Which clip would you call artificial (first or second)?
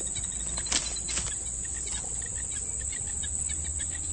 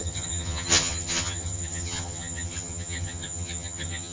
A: second